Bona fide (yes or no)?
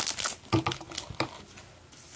yes